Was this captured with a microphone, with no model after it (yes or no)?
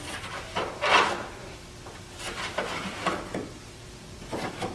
no